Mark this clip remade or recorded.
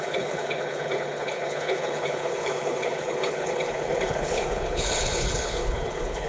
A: remade